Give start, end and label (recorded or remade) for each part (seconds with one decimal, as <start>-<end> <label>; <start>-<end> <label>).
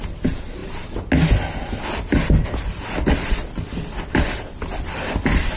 0.0-5.6 recorded